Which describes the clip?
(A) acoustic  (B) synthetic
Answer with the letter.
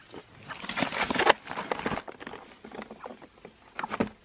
A